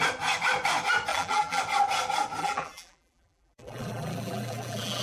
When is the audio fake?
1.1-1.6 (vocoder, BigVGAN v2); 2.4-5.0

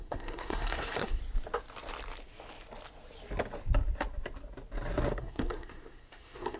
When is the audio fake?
0.0-1.2 (codec, SNAC); 5.2-6.6

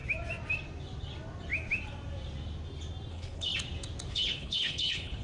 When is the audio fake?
3.1-3.5 (codec, HILCodec); 4.1-5.2

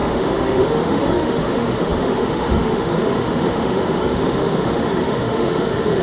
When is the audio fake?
0.0-6.0 (autoencoder, DAC-VAE)

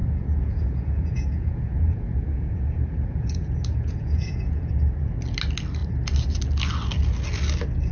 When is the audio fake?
0.0-4.7 (vocoder, Vocos)